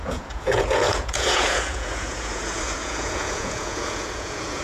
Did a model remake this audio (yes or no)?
yes